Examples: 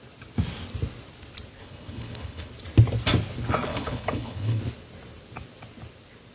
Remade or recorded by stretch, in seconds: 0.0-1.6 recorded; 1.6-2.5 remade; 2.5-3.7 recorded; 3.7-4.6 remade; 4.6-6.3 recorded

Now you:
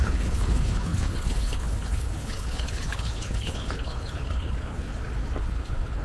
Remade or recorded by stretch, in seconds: 0.0-4.9 remade; 4.9-5.4 recorded; 5.4-6.0 remade

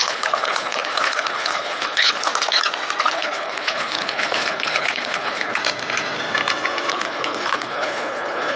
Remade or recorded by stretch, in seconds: 0.0-2.3 remade; 2.3-3.0 recorded; 3.0-5.6 remade; 5.6-6.9 recorded; 6.9-8.6 remade

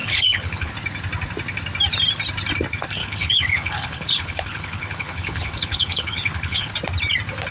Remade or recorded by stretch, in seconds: 0.0-0.7 remade; 0.7-3.0 recorded; 3.0-6.7 remade; 6.7-7.5 recorded

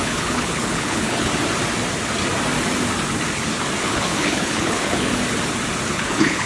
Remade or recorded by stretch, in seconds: 0.0-1.3 remade; 1.3-3.8 recorded; 3.8-5.1 remade; 5.1-5.9 recorded; 5.9-6.5 remade

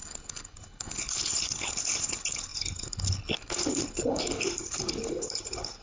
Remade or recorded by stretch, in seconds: 0.0-5.8 remade

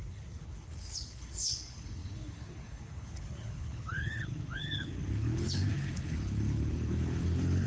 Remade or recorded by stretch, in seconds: 0.0-7.7 remade

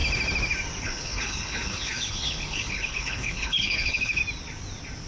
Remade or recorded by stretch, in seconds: 0.0-0.8 recorded; 0.8-4.2 remade; 4.2-5.1 recorded